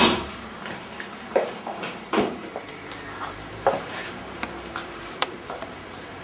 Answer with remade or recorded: remade